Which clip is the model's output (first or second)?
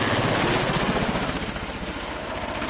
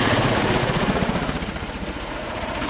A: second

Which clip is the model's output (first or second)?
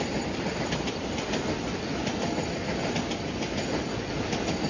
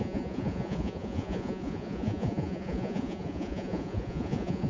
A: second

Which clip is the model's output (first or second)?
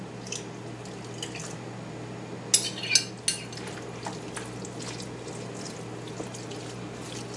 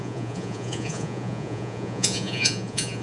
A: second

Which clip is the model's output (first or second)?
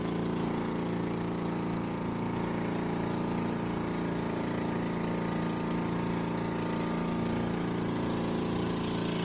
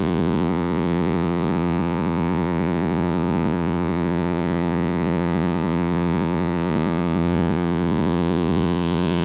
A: second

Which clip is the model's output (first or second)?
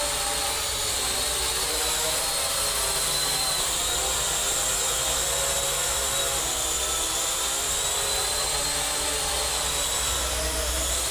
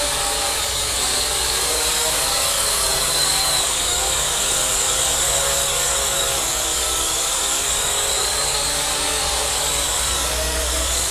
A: second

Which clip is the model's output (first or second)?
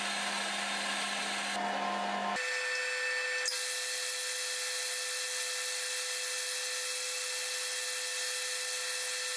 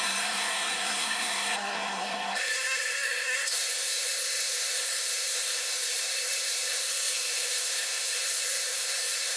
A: second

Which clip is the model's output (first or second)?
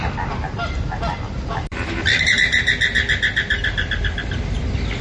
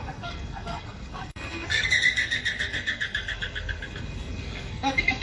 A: second